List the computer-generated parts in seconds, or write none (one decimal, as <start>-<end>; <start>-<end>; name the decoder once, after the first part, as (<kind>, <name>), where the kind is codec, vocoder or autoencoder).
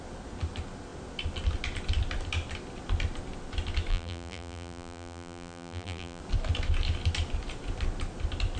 3.9-6.2 (vocoder, BigVGAN v2)